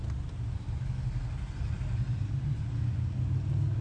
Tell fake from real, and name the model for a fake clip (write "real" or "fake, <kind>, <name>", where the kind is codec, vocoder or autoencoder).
real